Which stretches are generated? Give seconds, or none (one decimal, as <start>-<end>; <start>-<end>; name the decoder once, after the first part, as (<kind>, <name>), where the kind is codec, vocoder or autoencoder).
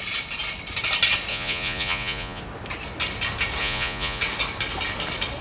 1.3-2.4 (vocoder, Vocos); 3.6-4.2